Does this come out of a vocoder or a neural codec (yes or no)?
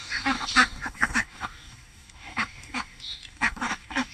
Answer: yes